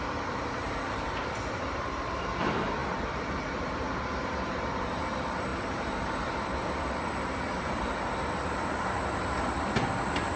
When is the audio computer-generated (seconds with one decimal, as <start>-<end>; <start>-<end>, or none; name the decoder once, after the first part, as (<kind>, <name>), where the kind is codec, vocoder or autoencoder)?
0.0-10.4 (vocoder, BigVGAN v2)